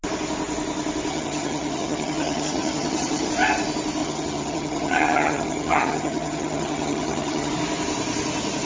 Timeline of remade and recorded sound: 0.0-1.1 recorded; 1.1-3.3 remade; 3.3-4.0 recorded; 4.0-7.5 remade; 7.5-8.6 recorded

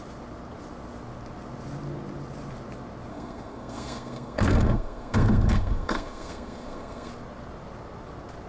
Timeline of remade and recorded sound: 0.0-3.1 recorded; 3.1-7.1 remade; 7.1-8.5 recorded

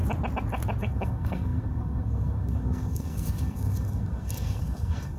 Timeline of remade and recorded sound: 0.0-0.8 recorded; 0.8-5.2 remade

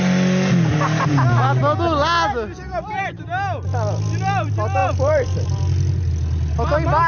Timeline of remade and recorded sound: 0.0-2.8 recorded; 2.8-3.3 remade; 3.3-4.8 recorded; 4.8-6.1 remade; 6.1-7.1 recorded

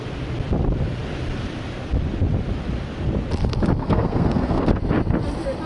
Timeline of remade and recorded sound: 0.0-3.8 recorded; 3.8-4.7 remade; 4.7-5.7 recorded

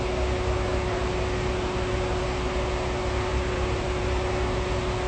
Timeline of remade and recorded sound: 0.0-5.1 recorded

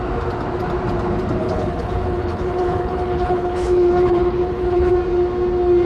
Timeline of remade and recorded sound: 0.0-1.4 recorded; 1.4-4.9 remade; 4.9-5.9 recorded